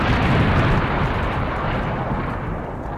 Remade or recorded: recorded